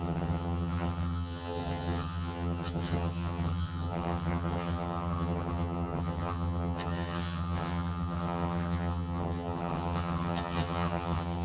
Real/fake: fake